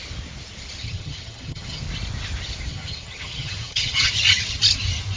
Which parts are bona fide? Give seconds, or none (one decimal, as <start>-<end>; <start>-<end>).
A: 0.0-0.8; 1.8-2.7; 4.1-5.2